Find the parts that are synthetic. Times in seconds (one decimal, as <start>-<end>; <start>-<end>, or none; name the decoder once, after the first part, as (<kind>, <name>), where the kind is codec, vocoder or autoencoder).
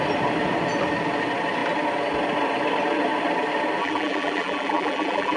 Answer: 3.8-5.4 (vocoder, BigVGAN v2)